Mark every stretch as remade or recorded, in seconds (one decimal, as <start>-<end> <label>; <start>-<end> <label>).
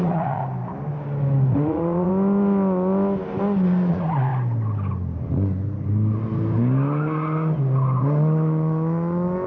0.0-0.4 remade; 0.4-1.5 recorded; 1.5-2.1 remade; 2.1-3.9 recorded; 3.9-4.3 remade; 4.3-9.5 recorded